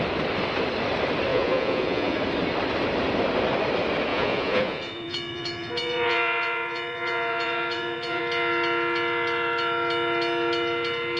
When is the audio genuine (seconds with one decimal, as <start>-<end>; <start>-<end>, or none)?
0.0-1.3; 2.2-4.1; 8.2-11.2